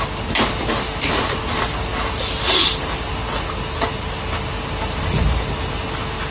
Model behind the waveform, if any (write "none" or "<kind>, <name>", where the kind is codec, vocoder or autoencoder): none